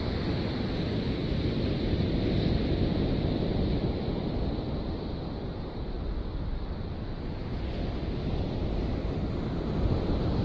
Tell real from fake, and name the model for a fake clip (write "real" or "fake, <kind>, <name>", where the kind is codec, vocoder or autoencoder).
fake, vocoder, BigVGAN v2